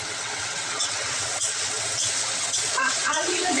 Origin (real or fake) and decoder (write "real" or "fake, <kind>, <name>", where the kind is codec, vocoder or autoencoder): fake, vocoder, WaveNeXt